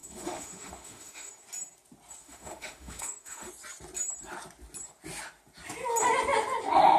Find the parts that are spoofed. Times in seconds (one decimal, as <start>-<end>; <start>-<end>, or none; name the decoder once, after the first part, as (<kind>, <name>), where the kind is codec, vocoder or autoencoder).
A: 0.0-1.3 (autoencoder, DAC-VAE); 2.2-3.5

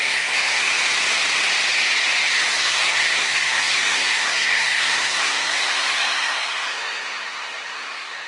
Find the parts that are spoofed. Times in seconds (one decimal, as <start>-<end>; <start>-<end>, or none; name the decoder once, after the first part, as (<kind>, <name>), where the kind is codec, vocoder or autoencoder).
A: 0.0-0.7 (codec, SNAC); 2.5-8.3